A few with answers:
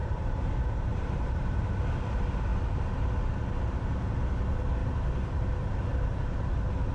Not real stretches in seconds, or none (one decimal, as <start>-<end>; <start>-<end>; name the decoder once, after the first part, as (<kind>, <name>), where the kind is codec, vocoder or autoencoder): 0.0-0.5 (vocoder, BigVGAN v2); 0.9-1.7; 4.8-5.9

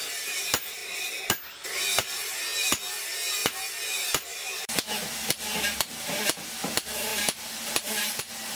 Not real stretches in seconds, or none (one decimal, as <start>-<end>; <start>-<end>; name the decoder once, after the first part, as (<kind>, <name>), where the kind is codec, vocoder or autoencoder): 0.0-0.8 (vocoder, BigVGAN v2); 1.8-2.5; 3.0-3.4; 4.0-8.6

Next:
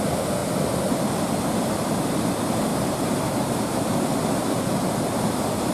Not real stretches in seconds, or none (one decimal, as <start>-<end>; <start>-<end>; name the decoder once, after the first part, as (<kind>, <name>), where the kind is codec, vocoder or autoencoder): 0.4-1.0 (vocoder, BigVGAN v2); 2.7-4.3